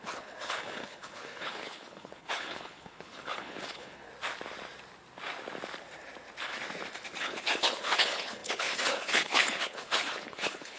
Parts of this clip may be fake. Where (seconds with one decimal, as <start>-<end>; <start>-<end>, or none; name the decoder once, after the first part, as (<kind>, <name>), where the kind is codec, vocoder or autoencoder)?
0.0-4.1 (codec, HILCodec); 7.2-10.8